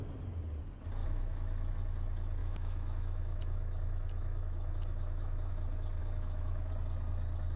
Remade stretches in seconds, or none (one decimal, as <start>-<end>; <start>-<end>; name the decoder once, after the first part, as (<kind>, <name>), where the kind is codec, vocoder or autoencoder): 1.0-1.7 (autoencoder, DAC-VAE); 2.4-5.5; 6.0-6.7

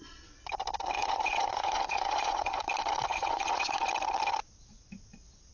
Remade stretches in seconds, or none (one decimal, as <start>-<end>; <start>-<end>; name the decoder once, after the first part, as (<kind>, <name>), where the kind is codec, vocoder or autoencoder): 1.0-2.7 (vocoder, Vocos); 3.1-3.8

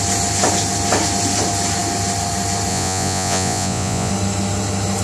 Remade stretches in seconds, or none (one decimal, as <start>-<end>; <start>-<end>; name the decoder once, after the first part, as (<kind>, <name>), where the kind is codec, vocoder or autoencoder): 2.7-4.1 (vocoder, Vocos)

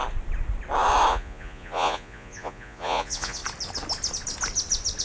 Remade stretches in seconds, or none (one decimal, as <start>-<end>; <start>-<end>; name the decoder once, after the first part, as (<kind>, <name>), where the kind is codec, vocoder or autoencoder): 1.1-3.4 (vocoder, Vocos)

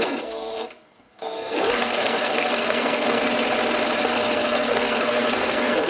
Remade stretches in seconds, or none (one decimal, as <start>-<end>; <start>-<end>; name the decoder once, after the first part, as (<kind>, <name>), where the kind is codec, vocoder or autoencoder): 0.0-3.2 (codec, SNAC); 4.0-5.9

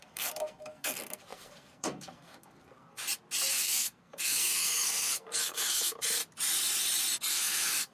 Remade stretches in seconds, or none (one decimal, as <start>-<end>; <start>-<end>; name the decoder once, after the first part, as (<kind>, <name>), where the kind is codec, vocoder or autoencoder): 0.0-3.0 (codec, SNAC); 3.5-6.2; 7.3-7.9